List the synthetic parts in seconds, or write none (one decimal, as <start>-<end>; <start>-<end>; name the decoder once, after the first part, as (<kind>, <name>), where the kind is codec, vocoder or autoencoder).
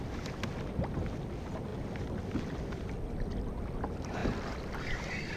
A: none